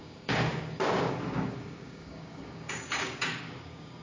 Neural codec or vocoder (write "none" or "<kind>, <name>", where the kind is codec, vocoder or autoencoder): codec, DAC